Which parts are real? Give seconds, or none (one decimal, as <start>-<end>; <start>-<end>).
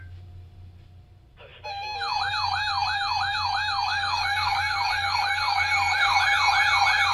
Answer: 0.0-3.9; 6.2-7.1